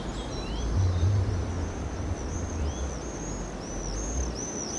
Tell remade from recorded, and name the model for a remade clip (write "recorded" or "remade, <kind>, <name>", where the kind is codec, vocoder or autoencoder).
recorded